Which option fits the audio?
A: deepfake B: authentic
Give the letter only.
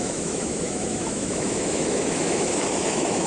A